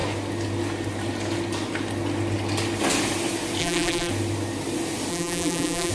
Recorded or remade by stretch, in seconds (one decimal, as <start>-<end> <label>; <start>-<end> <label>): 0.0-3.6 recorded; 3.6-4.1 remade; 4.1-5.1 recorded; 5.1-5.9 remade